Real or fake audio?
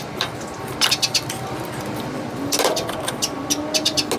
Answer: real